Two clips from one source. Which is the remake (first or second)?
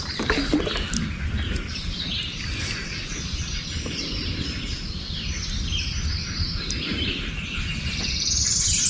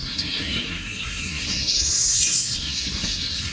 second